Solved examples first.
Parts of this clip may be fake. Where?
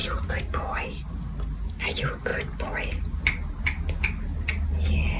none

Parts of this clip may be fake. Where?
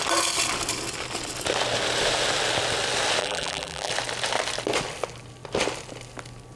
3.2-3.9 (vocoder, BigVGAN v2)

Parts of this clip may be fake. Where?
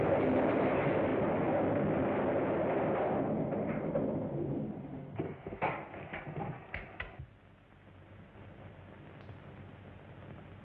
5.0-5.7 (codec, SNAC)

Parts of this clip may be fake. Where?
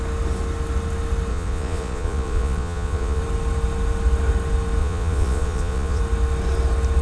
1.3-3.2 (vocoder, Vocos); 4.8-6.0